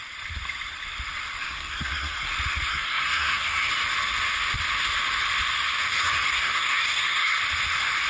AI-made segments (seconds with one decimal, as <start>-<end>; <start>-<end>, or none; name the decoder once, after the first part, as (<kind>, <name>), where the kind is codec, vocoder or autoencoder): 1.4-2.3 (codec, SNAC); 2.7-3.7; 5.9-7.4

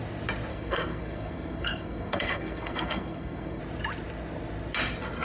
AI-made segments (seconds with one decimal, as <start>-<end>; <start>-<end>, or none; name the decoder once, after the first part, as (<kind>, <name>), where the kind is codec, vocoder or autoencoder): 0.5-3.6 (codec, SNAC)

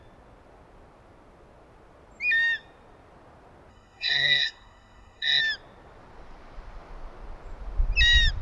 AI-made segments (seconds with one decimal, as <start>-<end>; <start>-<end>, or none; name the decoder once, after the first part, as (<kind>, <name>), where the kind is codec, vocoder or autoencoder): 3.7-5.4 (codec, SNAC)